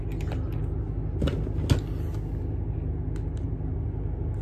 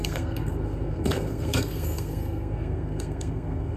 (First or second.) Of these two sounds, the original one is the first